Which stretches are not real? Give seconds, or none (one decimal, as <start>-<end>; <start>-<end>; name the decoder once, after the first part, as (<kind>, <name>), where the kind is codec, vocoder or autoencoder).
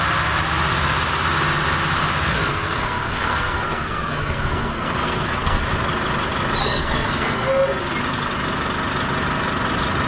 2.5-5.6 (codec, SNAC); 6.6-7.8